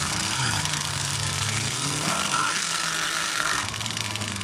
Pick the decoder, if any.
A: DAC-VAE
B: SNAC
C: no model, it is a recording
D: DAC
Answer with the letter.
B